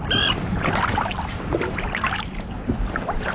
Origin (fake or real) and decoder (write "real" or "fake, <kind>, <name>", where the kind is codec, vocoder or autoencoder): real